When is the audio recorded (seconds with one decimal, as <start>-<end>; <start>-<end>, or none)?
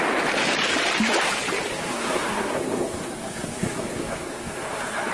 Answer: 0.0-1.7